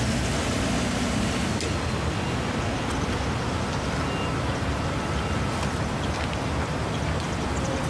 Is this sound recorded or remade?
recorded